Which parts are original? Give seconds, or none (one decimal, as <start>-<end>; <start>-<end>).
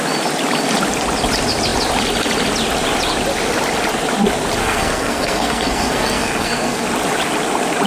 0.0-4.6; 6.8-7.9